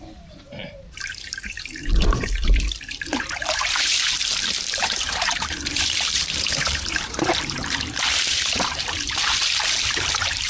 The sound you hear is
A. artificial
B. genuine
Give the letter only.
A